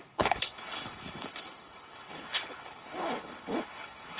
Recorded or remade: remade